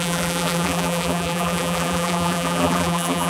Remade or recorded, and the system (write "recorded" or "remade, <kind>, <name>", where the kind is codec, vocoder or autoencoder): remade, vocoder, BigVGAN v2